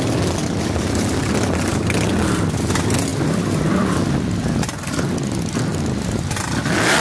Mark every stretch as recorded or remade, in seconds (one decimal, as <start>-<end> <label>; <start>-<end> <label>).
0.0-0.4 recorded; 0.4-1.3 remade; 1.3-5.7 recorded; 5.7-6.4 remade; 6.4-7.0 recorded